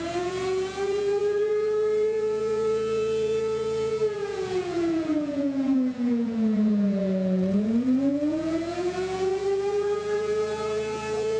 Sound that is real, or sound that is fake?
fake